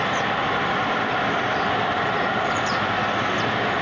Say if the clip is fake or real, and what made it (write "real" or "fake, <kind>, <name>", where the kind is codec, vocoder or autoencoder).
real